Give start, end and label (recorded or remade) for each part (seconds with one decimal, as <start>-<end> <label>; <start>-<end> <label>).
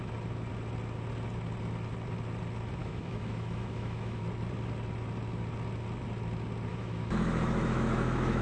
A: 0.0-2.8 recorded; 2.8-4.2 remade; 4.2-6.7 recorded; 6.7-8.4 remade